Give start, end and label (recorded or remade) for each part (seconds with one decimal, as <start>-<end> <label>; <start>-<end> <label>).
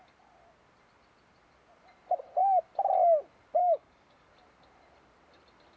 0.0-3.6 recorded; 3.6-4.3 remade; 4.3-5.8 recorded